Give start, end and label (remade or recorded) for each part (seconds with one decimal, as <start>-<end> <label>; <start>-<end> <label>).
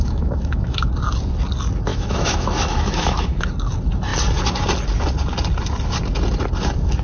0.0-0.9 remade; 0.9-1.9 recorded; 1.9-3.4 remade; 3.4-7.0 recorded